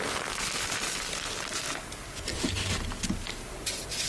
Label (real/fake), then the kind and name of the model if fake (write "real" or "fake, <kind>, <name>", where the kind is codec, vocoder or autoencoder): real